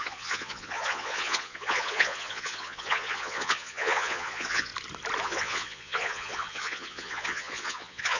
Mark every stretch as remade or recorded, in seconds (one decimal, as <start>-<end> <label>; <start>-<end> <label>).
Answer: 0.0-4.7 remade; 4.7-5.2 recorded; 5.2-8.2 remade